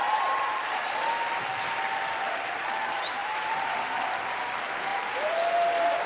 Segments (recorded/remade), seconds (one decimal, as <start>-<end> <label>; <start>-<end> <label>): 0.0-0.8 remade; 0.8-3.2 recorded; 3.2-4.3 remade; 4.3-4.9 recorded; 4.9-6.1 remade